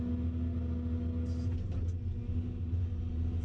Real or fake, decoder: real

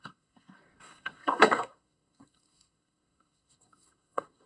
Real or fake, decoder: fake, codec, SNAC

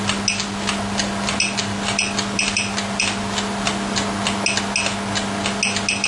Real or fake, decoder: real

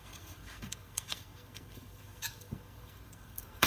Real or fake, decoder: fake, codec, SNAC